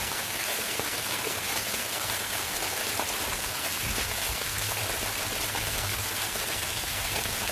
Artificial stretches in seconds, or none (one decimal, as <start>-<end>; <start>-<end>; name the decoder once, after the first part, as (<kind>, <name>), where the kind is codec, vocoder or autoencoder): 0.0-2.8 (codec, SNAC); 3.3-4.8; 5.5-7.5